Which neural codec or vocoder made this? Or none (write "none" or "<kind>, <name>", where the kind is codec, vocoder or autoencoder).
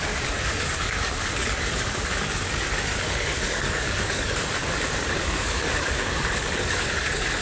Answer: codec, DAC